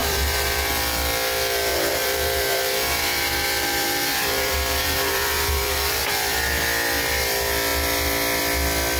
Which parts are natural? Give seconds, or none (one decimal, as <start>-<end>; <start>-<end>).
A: 0.7-1.7; 6.1-9.0